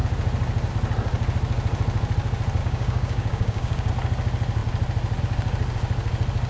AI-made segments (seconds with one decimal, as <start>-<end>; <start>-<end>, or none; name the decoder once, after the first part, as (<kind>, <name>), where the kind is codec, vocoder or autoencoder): 2.6-3.9 (codec, DAC)